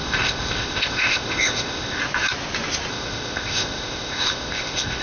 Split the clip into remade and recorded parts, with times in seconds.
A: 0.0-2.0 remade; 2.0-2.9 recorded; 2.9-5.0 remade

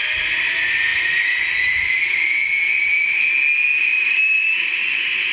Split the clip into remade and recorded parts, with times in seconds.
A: 0.0-0.9 recorded; 0.9-3.3 remade; 3.3-3.9 recorded; 3.9-5.3 remade

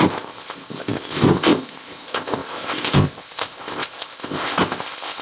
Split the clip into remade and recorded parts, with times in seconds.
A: 0.0-5.2 remade